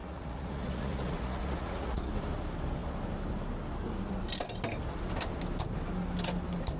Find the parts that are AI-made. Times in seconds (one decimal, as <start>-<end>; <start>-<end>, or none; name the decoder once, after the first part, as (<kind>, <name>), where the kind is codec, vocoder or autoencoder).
0.0-2.1 (vocoder, Vocos)